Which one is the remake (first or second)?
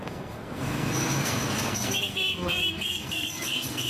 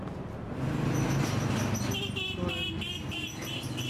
first